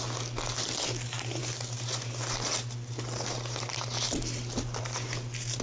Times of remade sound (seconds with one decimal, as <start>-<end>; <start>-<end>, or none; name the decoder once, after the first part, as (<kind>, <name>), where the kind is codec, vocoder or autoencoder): none